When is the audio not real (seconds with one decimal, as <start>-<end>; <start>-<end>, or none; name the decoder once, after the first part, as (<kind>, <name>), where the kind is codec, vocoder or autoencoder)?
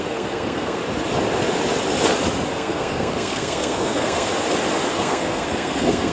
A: 0.0-0.8 (codec, SNAC); 2.5-4.3; 4.9-6.1